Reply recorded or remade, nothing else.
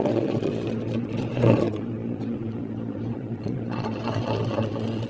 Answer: remade